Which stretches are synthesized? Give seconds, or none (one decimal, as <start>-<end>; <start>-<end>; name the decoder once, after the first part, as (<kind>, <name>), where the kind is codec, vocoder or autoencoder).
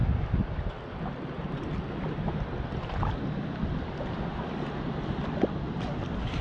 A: none